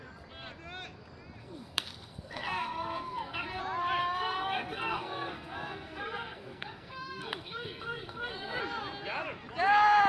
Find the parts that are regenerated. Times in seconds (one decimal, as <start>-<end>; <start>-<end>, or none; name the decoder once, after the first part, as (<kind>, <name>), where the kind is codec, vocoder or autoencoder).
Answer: 1.4-3.6 (codec, SNAC); 4.0-8.6